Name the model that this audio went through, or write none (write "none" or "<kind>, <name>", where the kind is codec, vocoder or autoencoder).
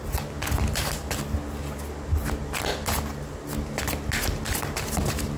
none